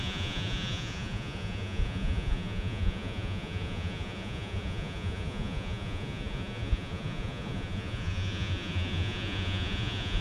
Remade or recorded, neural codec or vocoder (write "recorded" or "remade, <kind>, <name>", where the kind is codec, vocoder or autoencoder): remade, vocoder, Vocos